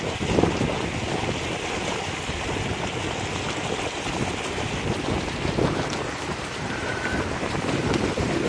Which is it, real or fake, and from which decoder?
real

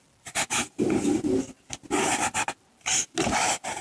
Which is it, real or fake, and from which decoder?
real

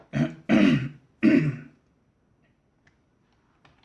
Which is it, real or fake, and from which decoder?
real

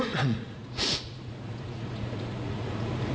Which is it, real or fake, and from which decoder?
fake, vocoder, Vocos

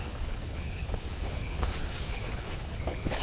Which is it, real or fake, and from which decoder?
fake, codec, HILCodec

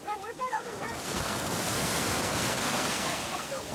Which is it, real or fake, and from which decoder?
fake, codec, SNAC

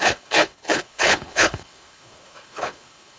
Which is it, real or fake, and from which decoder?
fake, codec, HILCodec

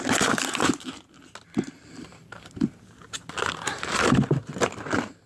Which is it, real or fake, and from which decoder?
real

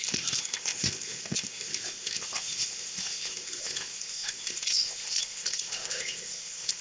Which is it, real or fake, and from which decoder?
fake, codec, ZipCodec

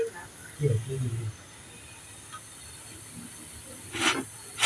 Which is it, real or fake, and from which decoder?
real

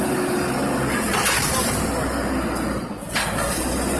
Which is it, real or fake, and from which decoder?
real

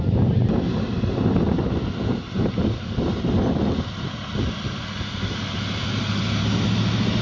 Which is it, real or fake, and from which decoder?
real